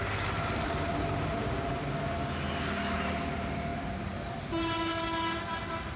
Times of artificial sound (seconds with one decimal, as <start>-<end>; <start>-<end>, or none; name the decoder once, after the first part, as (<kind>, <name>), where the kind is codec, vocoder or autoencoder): none